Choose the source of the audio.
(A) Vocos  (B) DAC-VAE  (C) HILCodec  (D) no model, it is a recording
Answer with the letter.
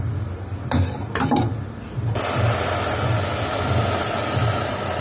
D